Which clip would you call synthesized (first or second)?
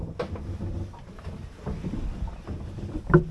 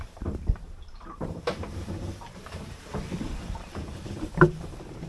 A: second